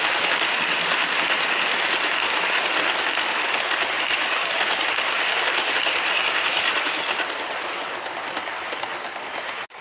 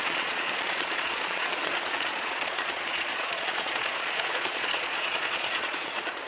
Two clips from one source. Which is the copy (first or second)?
second